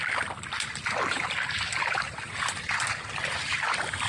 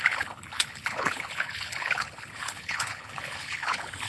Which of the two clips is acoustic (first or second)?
first